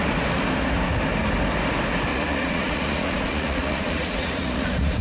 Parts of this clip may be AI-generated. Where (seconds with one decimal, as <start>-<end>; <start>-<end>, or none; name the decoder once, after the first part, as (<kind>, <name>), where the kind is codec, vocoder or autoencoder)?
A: 2.1-5.0 (vocoder, Vocos)